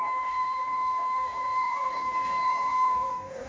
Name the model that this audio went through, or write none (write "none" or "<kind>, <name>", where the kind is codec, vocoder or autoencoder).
codec, DAC